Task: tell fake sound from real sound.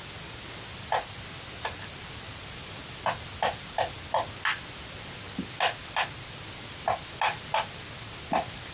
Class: real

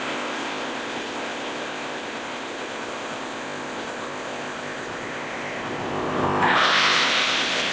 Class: fake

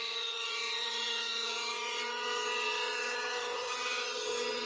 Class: fake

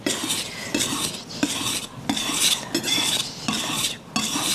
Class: real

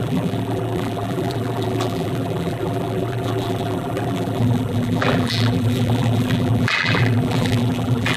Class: fake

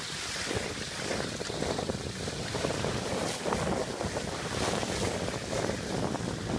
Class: real